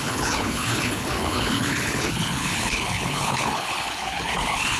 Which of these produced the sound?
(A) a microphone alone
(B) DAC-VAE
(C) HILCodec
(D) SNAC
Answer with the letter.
C